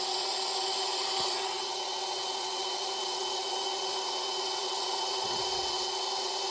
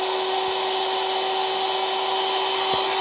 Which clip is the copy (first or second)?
first